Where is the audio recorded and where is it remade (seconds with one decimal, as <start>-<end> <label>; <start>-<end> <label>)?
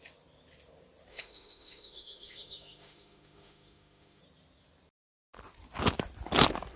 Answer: 0.0-1.1 recorded; 1.1-4.2 remade; 4.2-6.8 recorded